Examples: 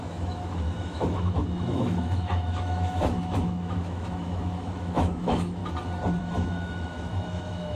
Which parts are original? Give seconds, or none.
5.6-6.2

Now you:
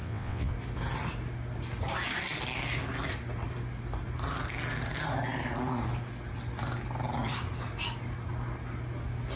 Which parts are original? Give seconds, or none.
0.5-9.4

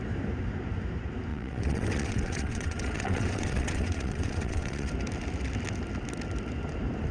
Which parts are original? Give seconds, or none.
0.0-1.3; 4.9-7.1

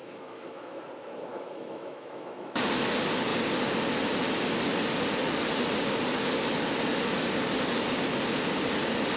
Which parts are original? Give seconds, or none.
0.8-1.3; 2.8-9.2

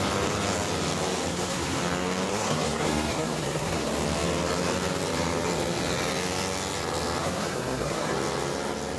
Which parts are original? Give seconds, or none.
0.0-1.3; 1.8-2.3; 3.9-7.2; 8.1-9.0